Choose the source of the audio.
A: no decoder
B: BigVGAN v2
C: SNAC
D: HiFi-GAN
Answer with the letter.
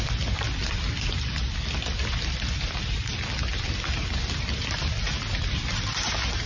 A